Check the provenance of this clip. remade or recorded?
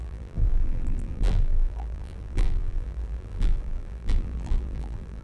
remade